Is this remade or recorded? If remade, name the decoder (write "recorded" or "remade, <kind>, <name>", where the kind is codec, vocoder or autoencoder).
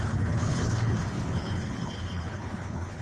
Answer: remade, codec, HILCodec